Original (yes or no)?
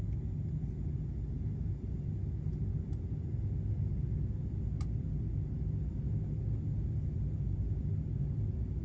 yes